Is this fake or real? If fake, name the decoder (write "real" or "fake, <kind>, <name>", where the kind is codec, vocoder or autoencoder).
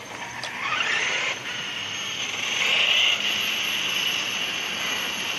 real